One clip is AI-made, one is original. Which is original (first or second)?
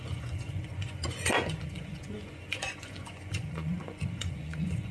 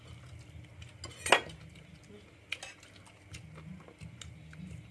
second